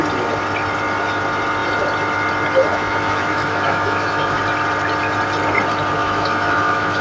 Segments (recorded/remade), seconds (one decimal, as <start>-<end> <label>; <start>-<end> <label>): 0.0-2.7 recorded; 2.7-4.4 remade; 4.4-6.0 recorded; 6.0-7.0 remade